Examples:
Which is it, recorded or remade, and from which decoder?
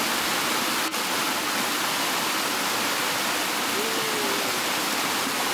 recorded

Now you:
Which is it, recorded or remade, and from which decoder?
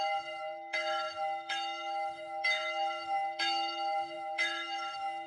remade, autoencoder, DAC-VAE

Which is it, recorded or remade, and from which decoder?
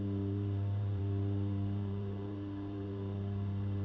remade, vocoder, BigVGAN v2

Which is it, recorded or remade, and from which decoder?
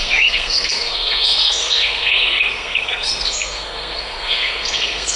remade, codec, SNAC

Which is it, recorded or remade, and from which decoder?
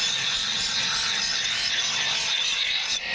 recorded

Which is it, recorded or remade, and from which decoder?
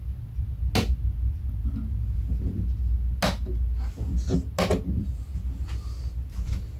recorded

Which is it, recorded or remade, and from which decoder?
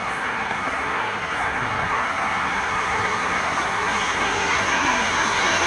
remade, codec, SNAC